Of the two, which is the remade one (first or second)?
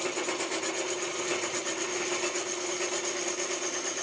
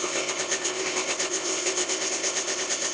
second